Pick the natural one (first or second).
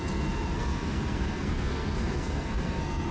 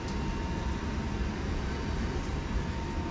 second